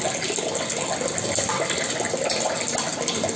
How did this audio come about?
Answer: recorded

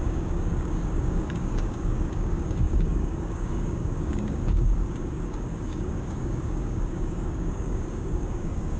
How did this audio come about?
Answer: remade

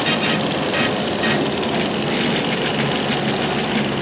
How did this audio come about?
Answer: recorded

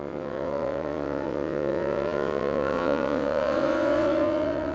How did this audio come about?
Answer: remade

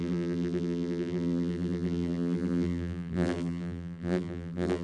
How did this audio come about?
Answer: remade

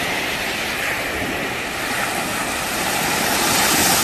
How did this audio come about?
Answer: recorded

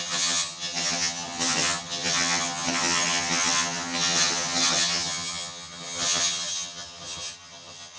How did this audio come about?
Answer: remade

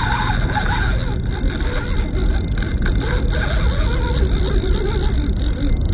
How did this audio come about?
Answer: recorded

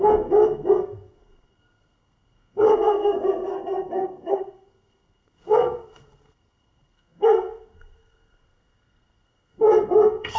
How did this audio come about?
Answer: remade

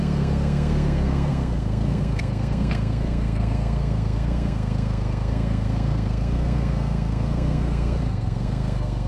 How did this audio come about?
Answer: remade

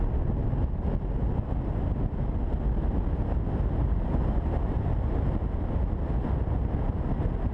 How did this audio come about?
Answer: recorded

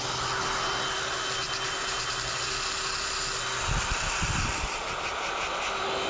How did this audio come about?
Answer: recorded